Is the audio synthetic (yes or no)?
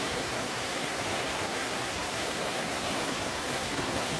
yes